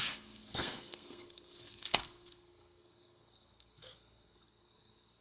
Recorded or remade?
remade